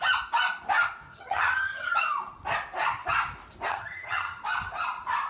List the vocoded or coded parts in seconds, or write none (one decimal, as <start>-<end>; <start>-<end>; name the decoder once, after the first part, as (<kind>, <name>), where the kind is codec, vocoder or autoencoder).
1.1-2.0 (vocoder, HiFi-GAN); 3.7-4.4